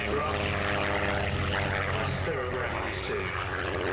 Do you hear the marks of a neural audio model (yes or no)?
no